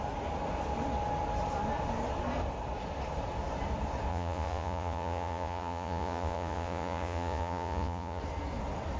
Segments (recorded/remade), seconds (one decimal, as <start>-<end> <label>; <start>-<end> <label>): 0.0-4.1 recorded; 4.1-8.2 remade; 8.2-9.0 recorded